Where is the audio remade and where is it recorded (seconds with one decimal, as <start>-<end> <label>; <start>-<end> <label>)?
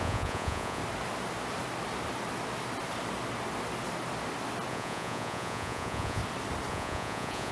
0.0-0.8 remade; 0.8-4.7 recorded; 4.7-6.2 remade; 6.2-6.7 recorded; 6.7-7.5 remade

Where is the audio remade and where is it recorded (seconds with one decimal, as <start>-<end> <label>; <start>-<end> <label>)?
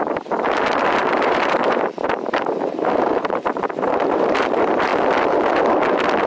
0.0-4.9 remade; 4.9-6.3 recorded